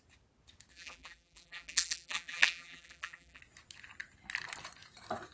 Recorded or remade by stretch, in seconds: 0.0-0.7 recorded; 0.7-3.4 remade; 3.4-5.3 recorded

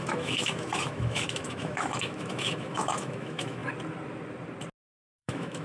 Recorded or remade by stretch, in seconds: 0.0-3.6 remade; 3.6-5.1 recorded; 5.1-5.6 remade

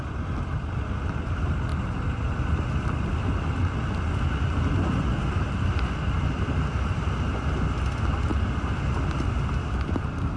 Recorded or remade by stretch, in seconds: 0.0-10.4 recorded

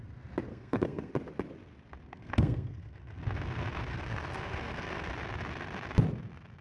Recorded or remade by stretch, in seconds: 0.0-0.5 recorded; 0.5-1.1 remade; 1.1-2.1 recorded; 2.1-3.2 remade; 3.2-3.9 recorded; 3.9-5.1 remade; 5.1-6.6 recorded

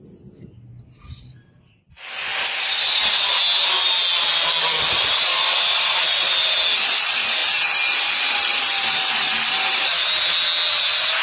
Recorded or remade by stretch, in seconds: 0.0-5.3 recorded; 5.3-6.3 remade; 6.3-11.2 recorded

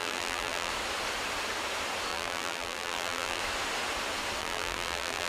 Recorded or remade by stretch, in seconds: 0.0-0.7 remade; 0.7-2.1 recorded; 2.1-3.4 remade; 3.4-4.4 recorded; 4.4-5.3 remade

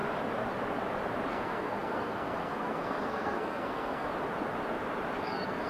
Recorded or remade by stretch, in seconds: 0.0-1.3 recorded; 1.3-4.1 remade; 4.1-5.2 recorded; 5.2-5.7 remade